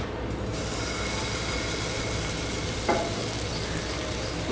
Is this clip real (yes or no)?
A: yes